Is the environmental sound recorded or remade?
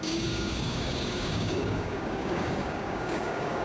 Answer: remade